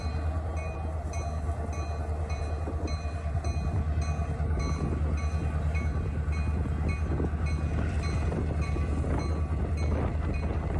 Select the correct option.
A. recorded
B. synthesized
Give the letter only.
A